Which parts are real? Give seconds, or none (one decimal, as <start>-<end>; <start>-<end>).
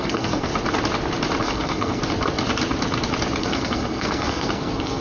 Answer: 0.5-1.4; 2.0-3.4